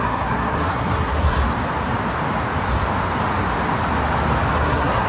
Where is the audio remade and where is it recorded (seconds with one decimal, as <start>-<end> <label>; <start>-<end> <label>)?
0.0-1.4 remade; 1.4-4.5 recorded; 4.5-5.1 remade